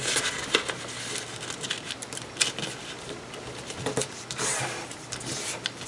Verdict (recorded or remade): recorded